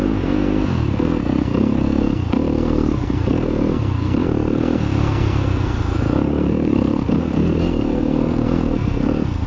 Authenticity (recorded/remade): remade